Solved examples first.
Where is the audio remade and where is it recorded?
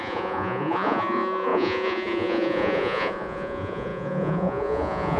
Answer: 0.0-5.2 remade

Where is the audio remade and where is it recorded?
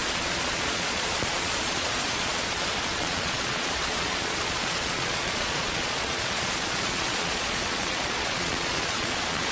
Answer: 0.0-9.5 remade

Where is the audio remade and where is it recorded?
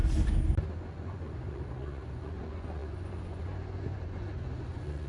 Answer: 0.0-0.8 recorded; 0.8-5.1 remade